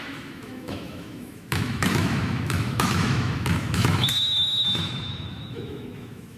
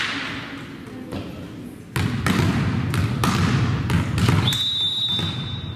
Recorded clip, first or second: second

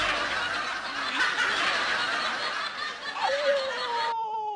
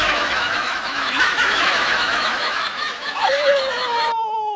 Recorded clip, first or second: first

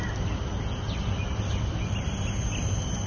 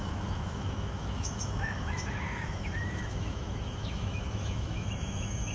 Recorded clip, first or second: first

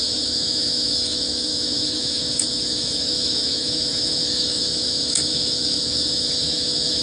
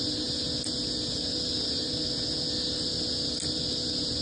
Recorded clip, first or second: second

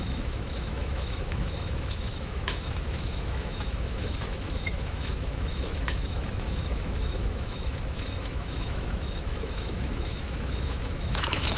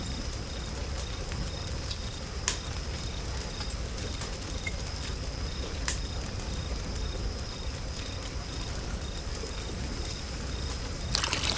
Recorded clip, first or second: second